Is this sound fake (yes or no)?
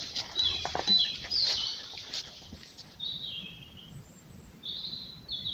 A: yes